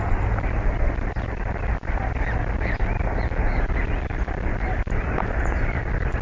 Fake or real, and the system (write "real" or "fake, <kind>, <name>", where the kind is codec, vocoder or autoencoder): real